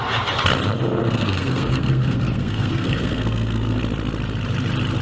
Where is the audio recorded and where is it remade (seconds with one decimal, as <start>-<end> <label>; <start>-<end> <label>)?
0.0-1.0 recorded; 1.0-3.8 remade; 3.8-5.0 recorded